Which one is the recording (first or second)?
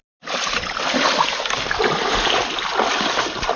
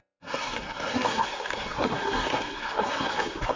first